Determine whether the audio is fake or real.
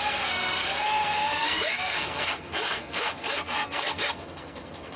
fake